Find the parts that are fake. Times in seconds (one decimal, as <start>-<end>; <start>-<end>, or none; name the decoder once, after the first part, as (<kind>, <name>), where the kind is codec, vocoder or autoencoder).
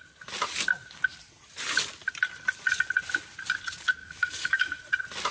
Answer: 4.0-4.8 (autoencoder, DAC-VAE)